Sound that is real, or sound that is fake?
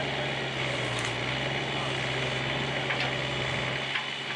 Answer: real